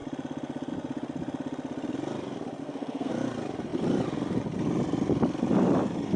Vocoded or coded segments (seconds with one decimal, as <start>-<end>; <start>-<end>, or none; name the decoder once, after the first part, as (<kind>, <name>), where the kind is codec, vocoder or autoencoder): 2.6-3.1 (codec, SNAC)